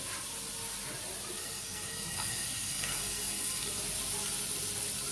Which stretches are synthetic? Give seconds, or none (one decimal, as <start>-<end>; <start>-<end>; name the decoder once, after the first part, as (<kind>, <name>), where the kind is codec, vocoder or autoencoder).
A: 1.4-3.8 (codec, SNAC)